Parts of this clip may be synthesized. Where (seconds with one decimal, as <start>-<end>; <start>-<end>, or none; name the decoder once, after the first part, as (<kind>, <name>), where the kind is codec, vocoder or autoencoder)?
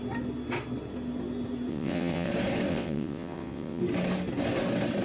1.7-2.3 (vocoder, WaveNeXt); 2.7-3.8